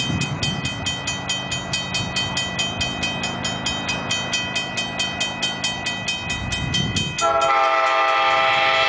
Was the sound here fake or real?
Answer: real